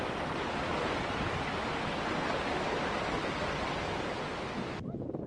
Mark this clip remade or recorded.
recorded